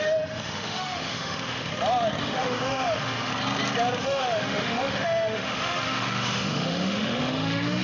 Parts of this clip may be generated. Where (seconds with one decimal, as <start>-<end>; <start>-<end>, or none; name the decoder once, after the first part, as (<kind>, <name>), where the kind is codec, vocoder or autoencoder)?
0.0-1.7 (autoencoder, DAC-VAE); 2.2-3.3; 4.0-7.8